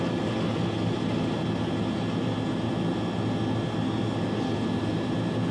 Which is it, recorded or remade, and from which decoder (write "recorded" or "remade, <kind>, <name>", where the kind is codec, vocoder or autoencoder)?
recorded